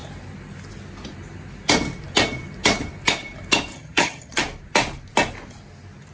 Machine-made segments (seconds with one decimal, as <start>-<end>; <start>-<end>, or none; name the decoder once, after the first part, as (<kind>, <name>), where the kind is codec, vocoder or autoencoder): 3.7-4.4 (vocoder, HiFi-GAN)